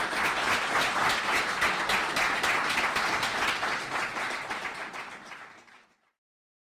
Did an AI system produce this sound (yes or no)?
no